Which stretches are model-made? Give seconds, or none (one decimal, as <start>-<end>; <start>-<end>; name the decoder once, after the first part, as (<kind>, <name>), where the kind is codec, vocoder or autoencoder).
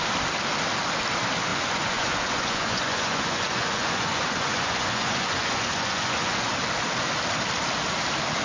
1.5-6.5 (vocoder, Vocos)